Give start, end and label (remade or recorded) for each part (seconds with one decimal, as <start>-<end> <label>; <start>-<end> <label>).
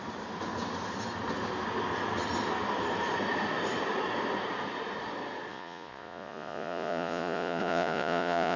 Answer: 0.0-5.5 recorded; 5.5-8.6 remade